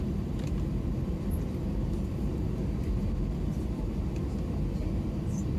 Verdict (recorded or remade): recorded